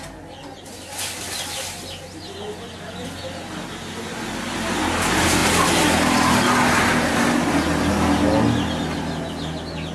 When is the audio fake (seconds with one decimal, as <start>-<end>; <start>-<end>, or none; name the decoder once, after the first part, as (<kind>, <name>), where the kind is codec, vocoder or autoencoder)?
none